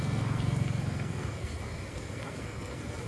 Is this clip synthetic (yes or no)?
yes